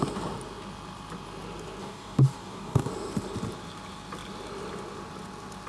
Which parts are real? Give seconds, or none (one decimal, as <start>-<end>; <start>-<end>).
0.0-1.8; 2.9-5.7